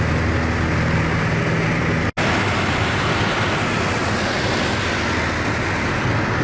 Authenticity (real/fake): real